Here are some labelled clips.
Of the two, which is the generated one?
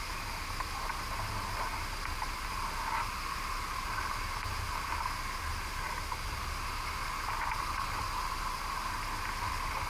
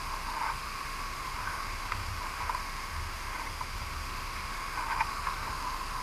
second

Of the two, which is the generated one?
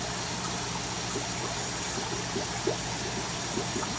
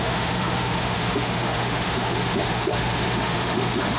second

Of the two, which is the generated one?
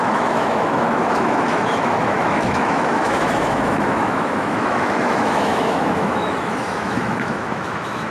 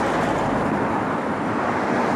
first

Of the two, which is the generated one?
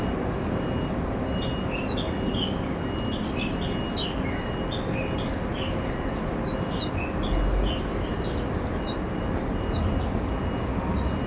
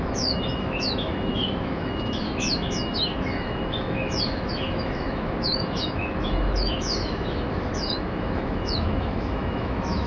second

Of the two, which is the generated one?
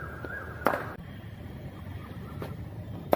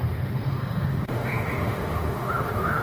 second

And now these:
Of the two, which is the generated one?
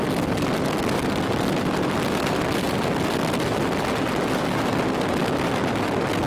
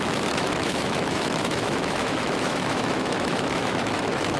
second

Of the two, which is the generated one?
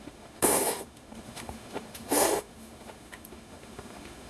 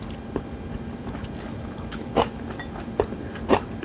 first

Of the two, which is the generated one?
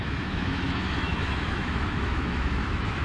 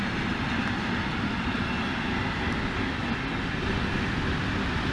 first